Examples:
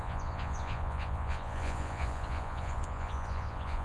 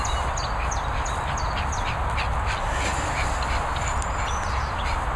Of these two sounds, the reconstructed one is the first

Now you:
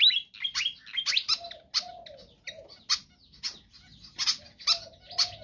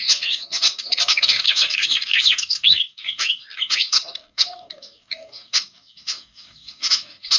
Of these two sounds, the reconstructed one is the second